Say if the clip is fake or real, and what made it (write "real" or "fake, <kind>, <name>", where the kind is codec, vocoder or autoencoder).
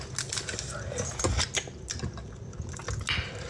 real